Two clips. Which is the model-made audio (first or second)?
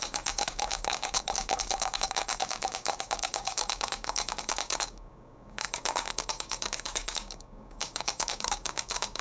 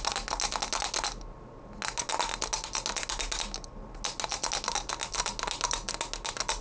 first